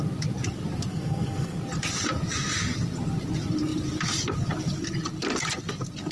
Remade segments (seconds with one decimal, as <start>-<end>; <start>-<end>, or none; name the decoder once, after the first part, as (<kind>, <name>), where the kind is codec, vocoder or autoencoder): 0.9-1.6 (codec, SNAC)